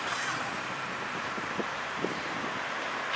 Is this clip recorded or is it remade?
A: remade